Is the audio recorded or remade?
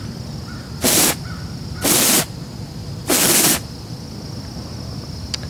recorded